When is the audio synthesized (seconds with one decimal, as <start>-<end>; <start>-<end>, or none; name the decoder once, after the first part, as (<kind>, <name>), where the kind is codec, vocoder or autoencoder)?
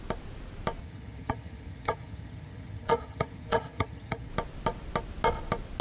0.8-4.3 (vocoder, HiFi-GAN)